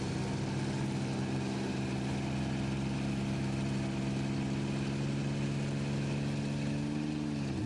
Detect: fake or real real